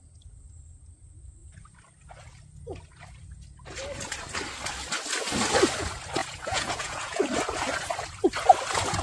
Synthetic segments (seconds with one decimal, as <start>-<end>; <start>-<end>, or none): 6.2-7.2